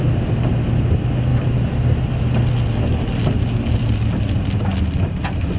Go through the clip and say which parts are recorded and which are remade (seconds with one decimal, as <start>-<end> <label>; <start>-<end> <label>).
0.0-5.6 recorded